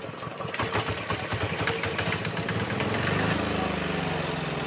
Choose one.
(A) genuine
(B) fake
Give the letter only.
A